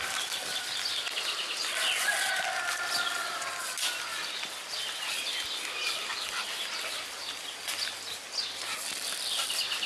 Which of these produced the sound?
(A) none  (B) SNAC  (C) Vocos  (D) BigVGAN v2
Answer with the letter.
A